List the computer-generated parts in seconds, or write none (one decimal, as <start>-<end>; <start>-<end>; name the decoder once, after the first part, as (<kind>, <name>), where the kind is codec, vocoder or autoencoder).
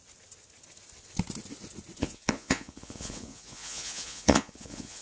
2.0-5.0 (vocoder, Vocos)